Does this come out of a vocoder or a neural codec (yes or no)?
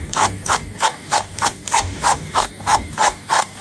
yes